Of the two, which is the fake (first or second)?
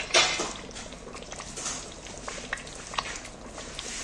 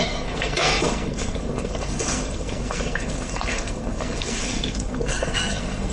second